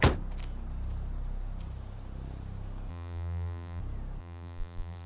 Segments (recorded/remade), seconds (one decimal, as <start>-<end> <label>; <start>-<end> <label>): 0.0-2.9 recorded; 2.9-3.8 remade; 3.8-4.2 recorded; 4.2-5.1 remade